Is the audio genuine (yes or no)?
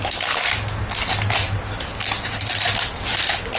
yes